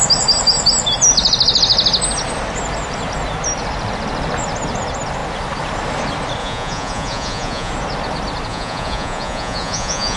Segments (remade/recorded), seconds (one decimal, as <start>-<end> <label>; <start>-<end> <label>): 0.0-6.4 recorded; 6.4-7.7 remade; 7.7-8.5 recorded; 8.5-10.2 remade